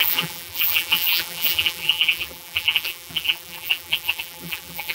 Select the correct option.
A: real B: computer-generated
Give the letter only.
B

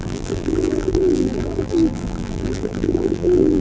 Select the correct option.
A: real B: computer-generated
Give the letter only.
B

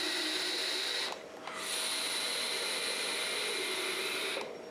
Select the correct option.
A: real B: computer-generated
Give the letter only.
A